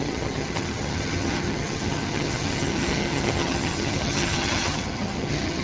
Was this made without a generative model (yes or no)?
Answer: no